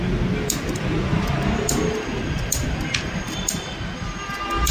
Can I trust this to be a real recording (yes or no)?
yes